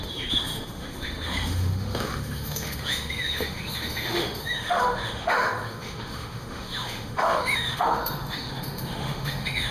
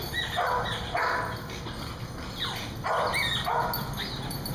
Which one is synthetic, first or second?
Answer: first